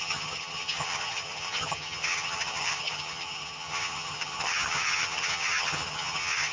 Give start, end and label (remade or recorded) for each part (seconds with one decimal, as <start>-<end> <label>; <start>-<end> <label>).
0.0-6.5 remade